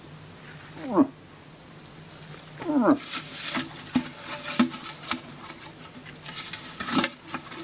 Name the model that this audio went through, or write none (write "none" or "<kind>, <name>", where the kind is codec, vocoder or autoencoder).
none